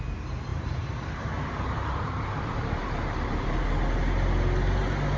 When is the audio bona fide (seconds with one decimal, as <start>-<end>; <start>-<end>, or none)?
0.0-0.5; 3.6-5.2